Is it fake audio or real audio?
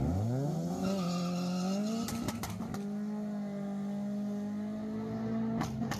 real